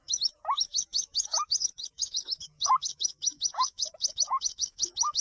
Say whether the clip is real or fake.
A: fake